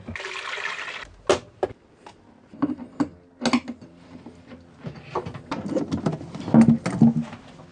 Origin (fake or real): real